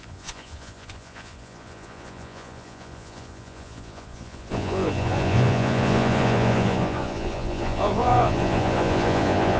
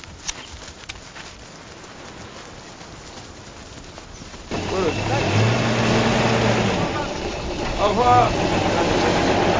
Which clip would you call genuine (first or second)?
second